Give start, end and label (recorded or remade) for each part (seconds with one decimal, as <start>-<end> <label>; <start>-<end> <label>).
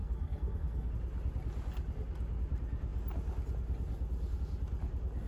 0.0-0.9 remade; 0.9-5.3 recorded